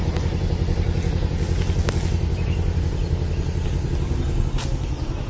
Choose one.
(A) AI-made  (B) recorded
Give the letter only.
B